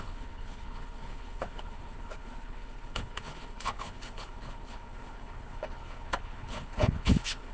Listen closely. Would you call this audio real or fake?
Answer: fake